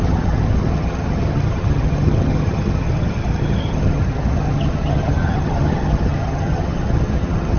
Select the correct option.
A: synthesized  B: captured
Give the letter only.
A